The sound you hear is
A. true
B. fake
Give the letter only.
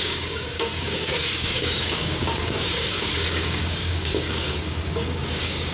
B